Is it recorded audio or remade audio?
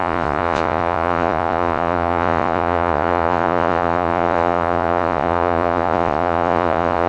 remade